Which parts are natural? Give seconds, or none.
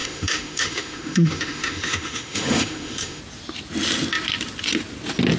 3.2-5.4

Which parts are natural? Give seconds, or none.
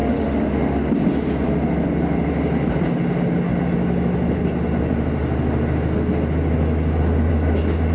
0.9-7.9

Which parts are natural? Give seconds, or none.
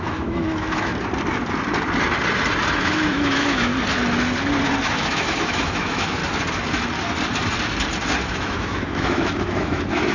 0.9-2.8; 3.7-4.9; 6.2-8.3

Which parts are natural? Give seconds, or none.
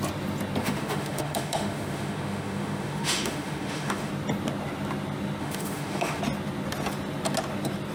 0.0-0.6; 4.1-5.4; 6.2-7.9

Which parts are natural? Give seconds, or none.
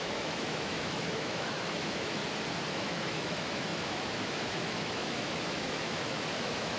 2.2-2.7